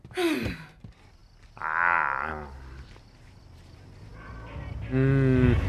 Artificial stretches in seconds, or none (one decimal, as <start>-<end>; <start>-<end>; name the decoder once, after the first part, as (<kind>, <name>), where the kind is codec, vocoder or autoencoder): none